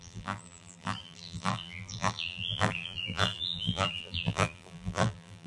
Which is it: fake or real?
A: fake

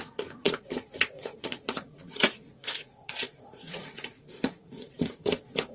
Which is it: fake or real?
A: fake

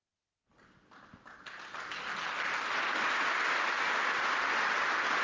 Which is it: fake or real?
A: real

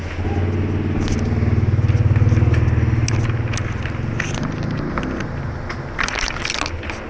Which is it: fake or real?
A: real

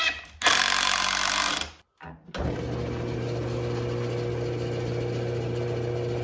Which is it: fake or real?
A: real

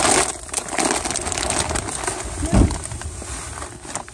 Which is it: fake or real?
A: real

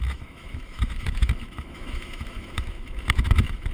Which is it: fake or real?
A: fake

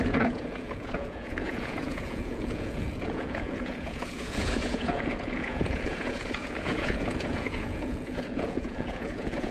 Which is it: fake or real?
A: fake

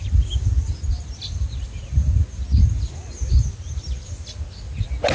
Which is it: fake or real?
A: real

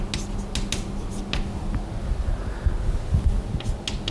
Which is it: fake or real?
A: real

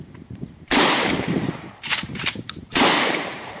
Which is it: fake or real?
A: fake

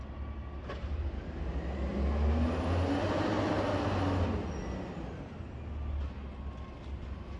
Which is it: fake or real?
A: real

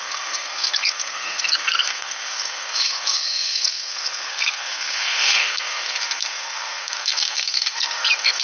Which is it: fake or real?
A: fake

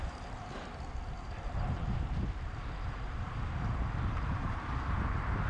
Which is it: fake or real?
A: fake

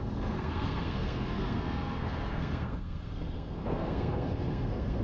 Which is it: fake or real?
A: fake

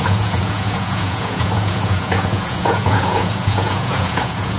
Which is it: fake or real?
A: fake